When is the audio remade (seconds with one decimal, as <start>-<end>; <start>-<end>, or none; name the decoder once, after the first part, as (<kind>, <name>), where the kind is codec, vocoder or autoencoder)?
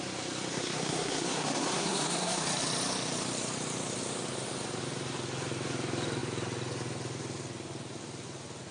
0.5-2.4 (codec, SNAC)